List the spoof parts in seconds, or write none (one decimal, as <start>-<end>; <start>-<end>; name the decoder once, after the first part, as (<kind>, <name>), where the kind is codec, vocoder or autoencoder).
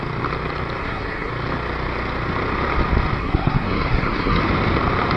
0.8-1.3 (codec, SNAC); 3.2-4.4